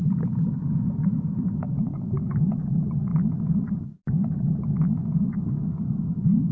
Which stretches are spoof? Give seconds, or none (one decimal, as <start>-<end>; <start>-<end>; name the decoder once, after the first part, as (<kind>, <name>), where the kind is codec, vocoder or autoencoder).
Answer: 0.0-3.1 (codec, DAC); 4.7-6.5